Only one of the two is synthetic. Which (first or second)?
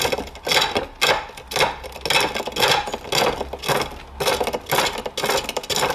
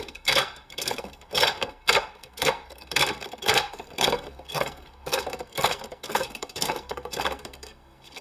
second